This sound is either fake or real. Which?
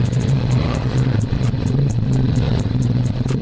fake